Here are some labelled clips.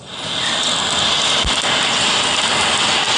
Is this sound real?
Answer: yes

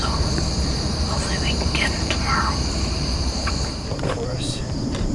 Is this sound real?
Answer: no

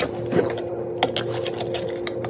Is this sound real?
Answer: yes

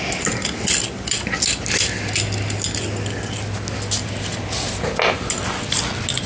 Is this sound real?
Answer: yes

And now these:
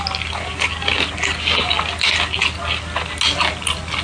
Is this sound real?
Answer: yes